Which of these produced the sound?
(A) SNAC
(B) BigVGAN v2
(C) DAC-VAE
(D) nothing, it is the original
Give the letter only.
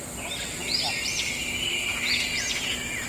D